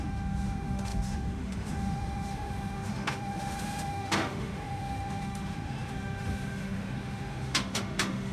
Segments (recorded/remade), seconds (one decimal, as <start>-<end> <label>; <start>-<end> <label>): 0.0-8.3 remade